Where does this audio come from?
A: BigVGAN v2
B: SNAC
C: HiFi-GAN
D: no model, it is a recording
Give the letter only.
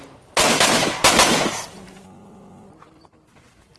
D